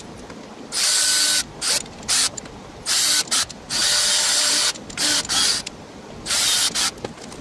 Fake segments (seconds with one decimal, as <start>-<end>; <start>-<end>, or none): none